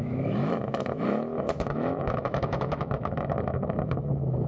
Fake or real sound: fake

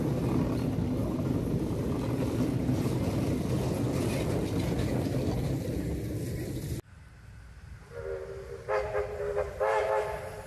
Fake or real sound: real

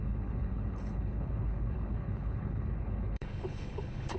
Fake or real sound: fake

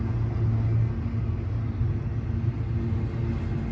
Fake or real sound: real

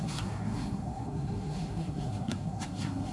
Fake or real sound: fake